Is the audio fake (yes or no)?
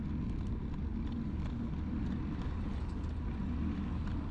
no